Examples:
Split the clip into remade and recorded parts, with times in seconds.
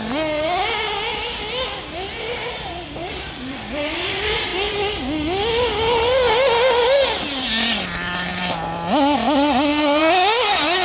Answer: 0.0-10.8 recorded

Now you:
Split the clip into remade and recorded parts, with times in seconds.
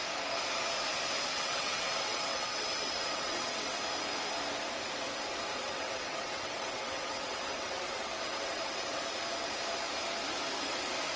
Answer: 0.0-1.3 recorded; 1.3-3.8 remade; 3.8-5.5 recorded; 5.5-9.0 remade; 9.0-11.2 recorded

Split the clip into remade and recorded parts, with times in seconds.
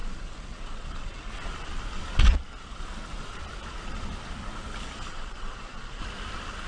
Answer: 0.0-1.3 remade; 1.3-5.1 recorded; 5.1-6.0 remade; 6.0-6.7 recorded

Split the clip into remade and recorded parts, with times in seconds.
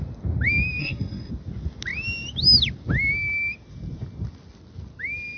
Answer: 0.0-0.8 recorded; 0.8-1.3 remade; 1.3-5.4 recorded